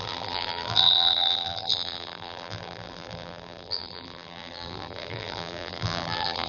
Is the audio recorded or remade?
remade